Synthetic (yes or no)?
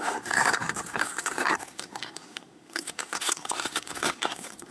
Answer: yes